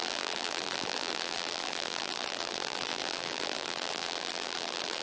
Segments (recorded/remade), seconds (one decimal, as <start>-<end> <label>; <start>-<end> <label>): 0.0-5.0 remade